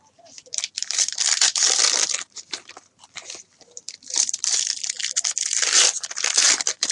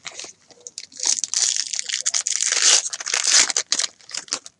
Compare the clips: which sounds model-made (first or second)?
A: first